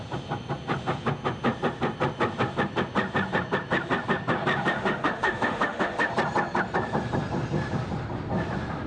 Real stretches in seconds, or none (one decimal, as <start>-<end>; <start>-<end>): 0.0-4.7; 6.1-8.9